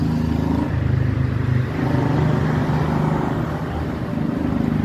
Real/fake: real